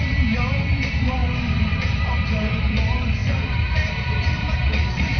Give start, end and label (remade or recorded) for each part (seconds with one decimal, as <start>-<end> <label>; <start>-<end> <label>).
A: 0.0-5.2 remade